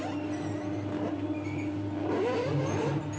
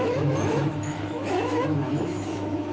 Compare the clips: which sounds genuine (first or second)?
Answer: first